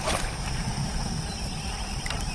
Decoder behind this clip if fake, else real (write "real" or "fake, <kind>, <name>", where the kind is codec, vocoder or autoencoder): real